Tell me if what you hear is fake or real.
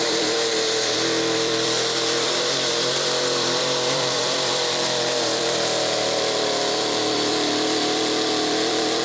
fake